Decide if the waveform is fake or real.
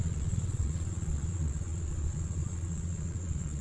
fake